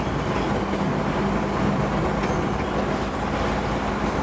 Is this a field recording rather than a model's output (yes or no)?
yes